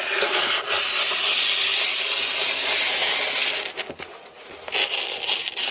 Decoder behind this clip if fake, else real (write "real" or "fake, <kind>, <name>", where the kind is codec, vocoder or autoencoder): real